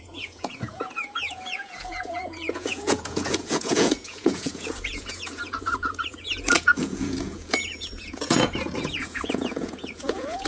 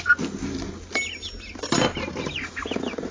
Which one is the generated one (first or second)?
first